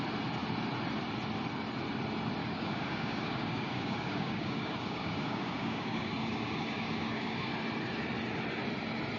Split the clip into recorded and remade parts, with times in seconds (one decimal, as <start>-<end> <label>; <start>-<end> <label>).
0.0-2.4 recorded; 2.4-7.5 remade; 7.5-9.2 recorded